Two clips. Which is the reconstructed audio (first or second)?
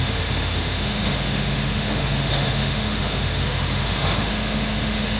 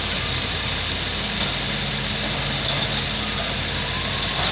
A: first